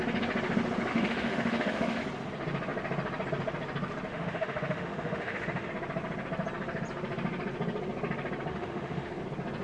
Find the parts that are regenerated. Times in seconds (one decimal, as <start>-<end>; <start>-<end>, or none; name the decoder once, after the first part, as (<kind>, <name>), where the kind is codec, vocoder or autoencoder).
0.9-2.0 (autoencoder, DAC-VAE); 4.1-5.7; 8.5-9.1